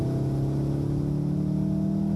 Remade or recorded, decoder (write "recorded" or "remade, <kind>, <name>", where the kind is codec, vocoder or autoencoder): recorded